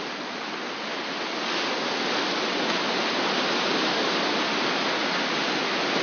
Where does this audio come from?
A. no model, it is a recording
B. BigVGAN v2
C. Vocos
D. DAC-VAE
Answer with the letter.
A